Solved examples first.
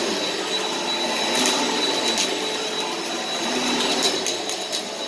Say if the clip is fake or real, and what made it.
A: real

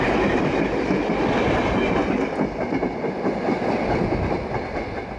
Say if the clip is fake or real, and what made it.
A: real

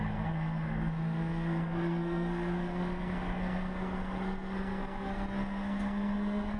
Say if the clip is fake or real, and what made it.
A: fake, codec, SNAC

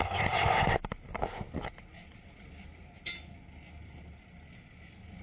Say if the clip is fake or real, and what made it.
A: real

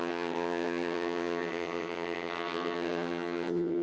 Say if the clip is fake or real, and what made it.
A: fake, vocoder, HiFi-GAN